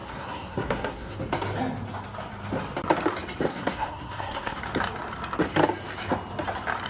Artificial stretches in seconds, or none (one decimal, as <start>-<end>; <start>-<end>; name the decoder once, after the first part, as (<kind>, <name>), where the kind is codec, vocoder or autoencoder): 0.0-1.2 (codec, SNAC); 3.5-4.6

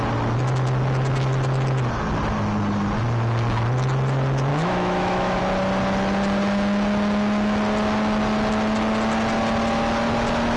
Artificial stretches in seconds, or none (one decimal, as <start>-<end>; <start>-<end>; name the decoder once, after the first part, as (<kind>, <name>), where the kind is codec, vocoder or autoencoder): 4.5-5.4 (autoencoder, DAC-VAE)

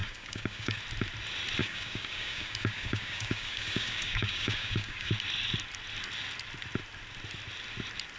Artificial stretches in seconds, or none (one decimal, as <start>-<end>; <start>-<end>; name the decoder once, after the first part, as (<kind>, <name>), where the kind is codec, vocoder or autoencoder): 0.0-0.8 (codec, DAC); 1.6-5.1

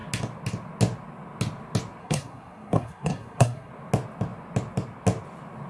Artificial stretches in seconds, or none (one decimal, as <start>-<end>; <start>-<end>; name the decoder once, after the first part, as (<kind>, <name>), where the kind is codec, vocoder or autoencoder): 2.0-3.7 (codec, SNAC)

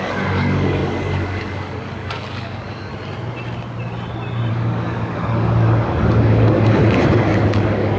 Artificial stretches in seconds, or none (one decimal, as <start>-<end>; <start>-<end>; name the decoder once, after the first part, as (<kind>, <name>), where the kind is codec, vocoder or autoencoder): 0.0-2.9 (codec, DAC); 4.5-8.0

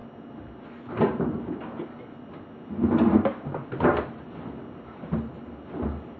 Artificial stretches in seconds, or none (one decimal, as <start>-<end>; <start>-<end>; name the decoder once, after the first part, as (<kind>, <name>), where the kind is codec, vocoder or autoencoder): none

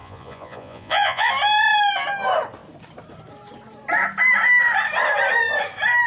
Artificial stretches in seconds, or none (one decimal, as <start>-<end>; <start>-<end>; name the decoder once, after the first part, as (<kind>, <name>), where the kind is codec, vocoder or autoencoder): 0.0-1.3 (vocoder, Vocos)

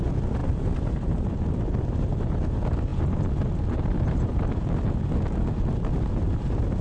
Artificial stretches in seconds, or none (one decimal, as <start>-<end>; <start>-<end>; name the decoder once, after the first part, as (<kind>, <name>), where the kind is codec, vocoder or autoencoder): none